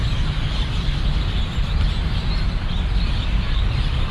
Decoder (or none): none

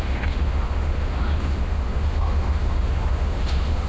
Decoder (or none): autoencoder, DAC-VAE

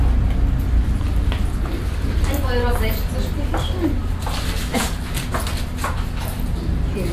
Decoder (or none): none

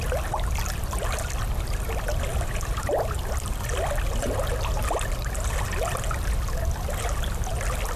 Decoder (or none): none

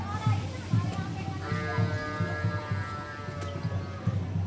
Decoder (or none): none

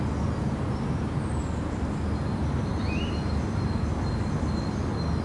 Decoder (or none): none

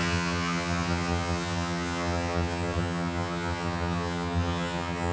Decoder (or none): vocoder, HiFi-GAN